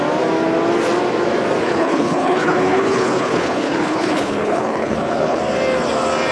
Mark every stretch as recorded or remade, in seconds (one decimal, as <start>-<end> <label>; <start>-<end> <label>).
0.0-1.6 recorded; 1.6-5.4 remade; 5.4-6.3 recorded